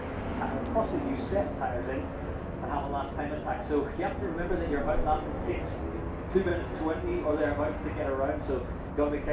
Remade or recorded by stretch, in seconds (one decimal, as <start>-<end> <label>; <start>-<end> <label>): 0.0-9.3 recorded